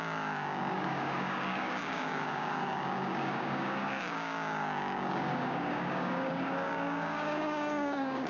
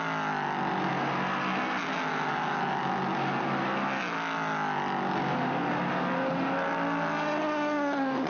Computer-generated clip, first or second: first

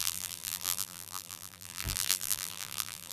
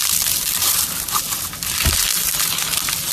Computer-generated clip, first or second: first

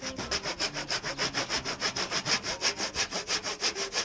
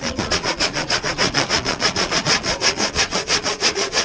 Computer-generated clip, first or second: second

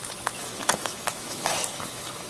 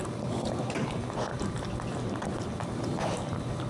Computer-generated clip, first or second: first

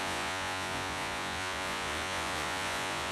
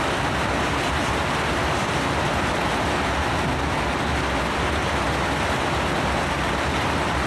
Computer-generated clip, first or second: first